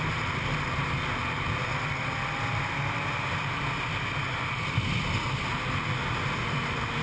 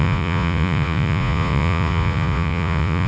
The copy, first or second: second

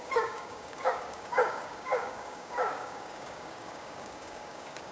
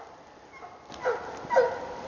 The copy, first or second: first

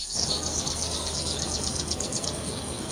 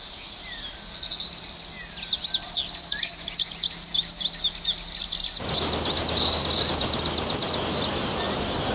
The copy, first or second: first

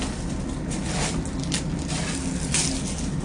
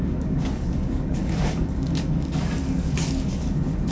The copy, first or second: second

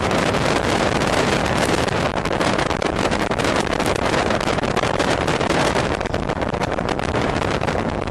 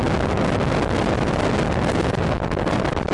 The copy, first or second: first